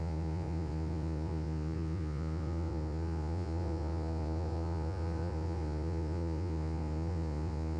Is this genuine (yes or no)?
no